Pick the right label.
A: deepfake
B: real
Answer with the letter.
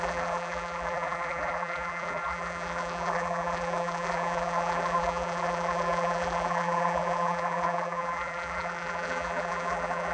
A